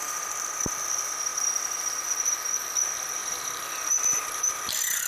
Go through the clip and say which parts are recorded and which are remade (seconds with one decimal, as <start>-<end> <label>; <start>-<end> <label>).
0.0-5.1 recorded